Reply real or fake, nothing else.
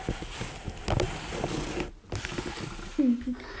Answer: real